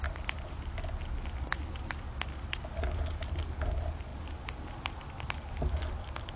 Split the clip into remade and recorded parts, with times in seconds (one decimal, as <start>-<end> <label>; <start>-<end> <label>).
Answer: 0.0-6.4 recorded